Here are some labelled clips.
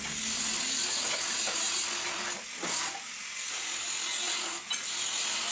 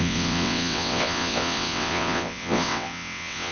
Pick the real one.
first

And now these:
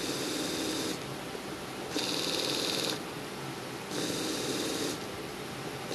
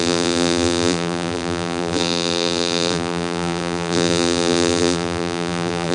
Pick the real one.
first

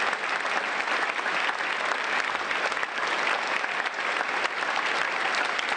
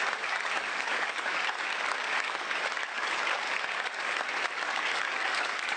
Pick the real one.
first